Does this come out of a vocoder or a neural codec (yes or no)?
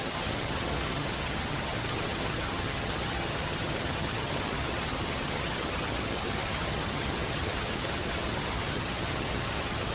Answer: yes